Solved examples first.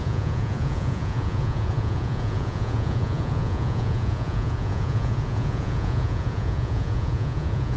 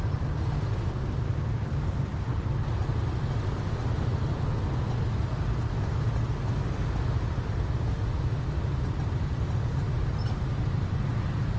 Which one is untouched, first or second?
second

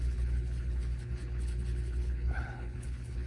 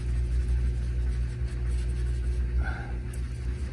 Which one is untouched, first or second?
second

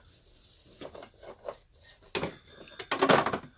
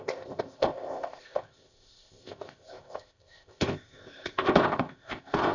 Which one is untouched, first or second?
first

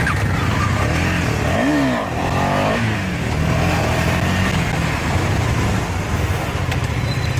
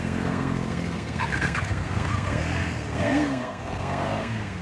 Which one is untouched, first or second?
first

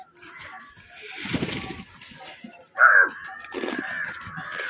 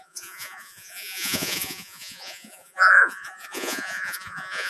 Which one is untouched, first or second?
first